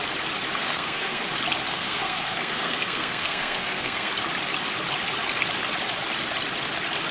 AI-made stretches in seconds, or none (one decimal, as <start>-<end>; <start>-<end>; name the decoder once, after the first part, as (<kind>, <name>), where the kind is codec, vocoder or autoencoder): 0.6-1.2 (codec, SNAC); 1.6-4.1